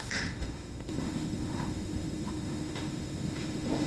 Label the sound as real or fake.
fake